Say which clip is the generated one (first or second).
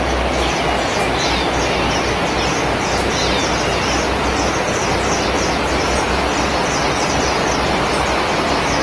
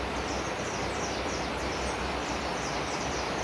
second